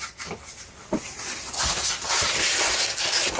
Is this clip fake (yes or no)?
no